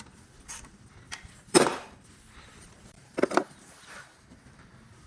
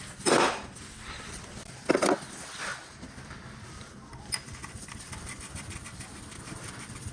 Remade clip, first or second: first